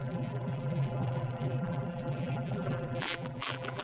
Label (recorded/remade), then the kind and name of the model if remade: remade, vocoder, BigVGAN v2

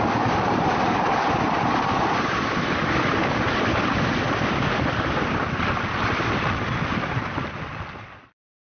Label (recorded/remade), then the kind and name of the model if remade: recorded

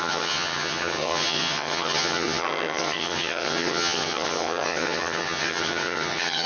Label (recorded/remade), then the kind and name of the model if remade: remade, vocoder, HiFi-GAN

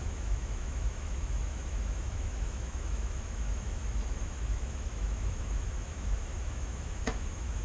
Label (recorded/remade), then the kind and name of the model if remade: remade, autoencoder, DAC-VAE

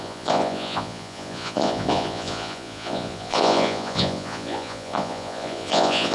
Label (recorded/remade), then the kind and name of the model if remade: remade, vocoder, Vocos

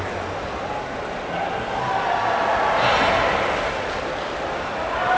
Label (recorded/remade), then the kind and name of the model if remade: recorded